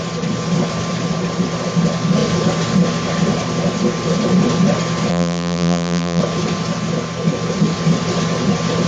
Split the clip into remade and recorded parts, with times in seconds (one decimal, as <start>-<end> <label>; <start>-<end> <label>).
0.0-5.1 recorded; 5.1-6.2 remade; 6.2-8.9 recorded